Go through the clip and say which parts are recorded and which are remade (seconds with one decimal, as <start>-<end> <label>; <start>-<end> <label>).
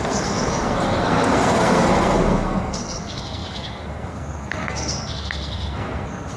0.0-6.4 remade